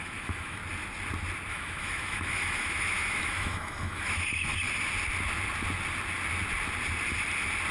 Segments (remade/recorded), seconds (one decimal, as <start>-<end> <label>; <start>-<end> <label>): 0.0-0.6 remade; 0.6-1.5 recorded; 1.5-4.5 remade; 4.5-7.7 recorded